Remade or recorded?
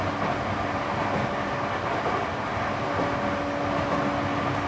recorded